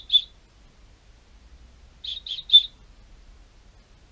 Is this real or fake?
real